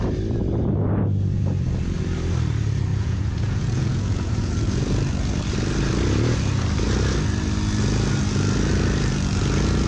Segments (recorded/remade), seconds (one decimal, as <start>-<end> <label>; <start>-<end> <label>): 0.0-2.9 recorded; 2.9-4.5 remade; 4.5-9.9 recorded